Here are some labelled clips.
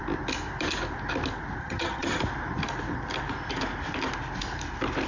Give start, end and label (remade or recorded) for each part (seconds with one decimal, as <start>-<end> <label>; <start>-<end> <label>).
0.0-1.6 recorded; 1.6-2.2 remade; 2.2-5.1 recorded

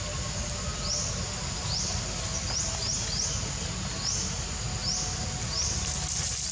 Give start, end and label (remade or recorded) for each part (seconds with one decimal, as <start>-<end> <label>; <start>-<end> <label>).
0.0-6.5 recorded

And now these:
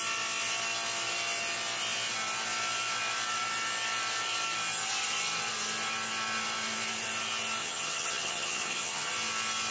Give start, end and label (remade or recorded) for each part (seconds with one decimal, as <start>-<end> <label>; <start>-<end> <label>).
0.0-7.6 recorded; 7.6-9.1 remade; 9.1-9.7 recorded